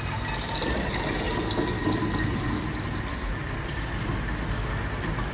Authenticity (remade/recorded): recorded